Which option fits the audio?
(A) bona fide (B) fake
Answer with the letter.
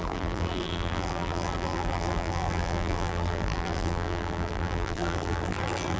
B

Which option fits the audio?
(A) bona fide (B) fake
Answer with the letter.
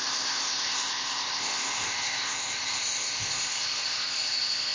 B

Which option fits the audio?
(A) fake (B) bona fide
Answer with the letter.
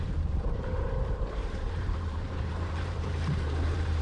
A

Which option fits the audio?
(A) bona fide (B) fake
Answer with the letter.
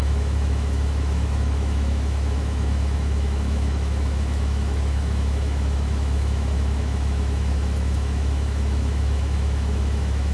B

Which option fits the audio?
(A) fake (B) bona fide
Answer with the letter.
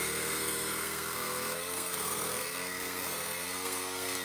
A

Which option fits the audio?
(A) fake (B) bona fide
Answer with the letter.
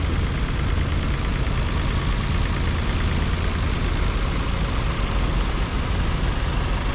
B